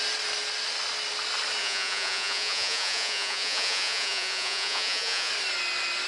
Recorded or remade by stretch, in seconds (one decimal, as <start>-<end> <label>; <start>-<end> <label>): 0.0-1.6 recorded; 1.6-5.3 remade; 5.3-6.1 recorded